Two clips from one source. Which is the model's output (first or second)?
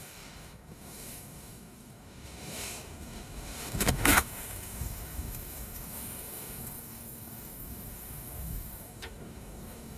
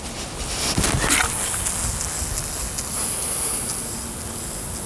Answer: first